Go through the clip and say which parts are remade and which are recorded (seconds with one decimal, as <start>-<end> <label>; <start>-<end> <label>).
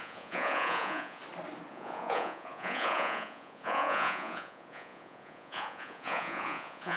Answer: 0.0-1.2 remade; 1.2-1.7 recorded; 1.7-7.0 remade